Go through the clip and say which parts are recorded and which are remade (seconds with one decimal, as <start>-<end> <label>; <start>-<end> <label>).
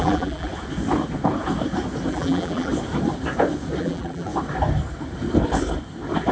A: 0.0-0.5 remade; 0.5-2.1 recorded; 2.1-2.7 remade; 2.7-3.8 recorded; 3.8-4.3 remade; 4.3-6.3 recorded